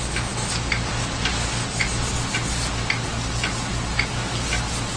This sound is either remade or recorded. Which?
recorded